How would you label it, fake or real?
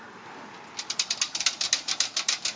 real